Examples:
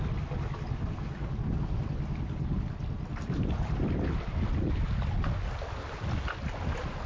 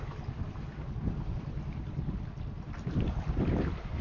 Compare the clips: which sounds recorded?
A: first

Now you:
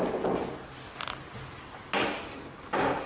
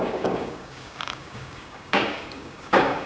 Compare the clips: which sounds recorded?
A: first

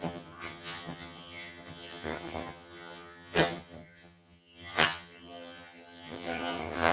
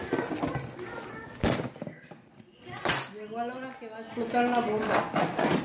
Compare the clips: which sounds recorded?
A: second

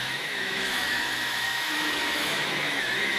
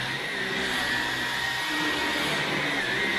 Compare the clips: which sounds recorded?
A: second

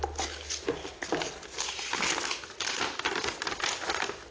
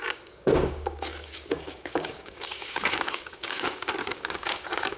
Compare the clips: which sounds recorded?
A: first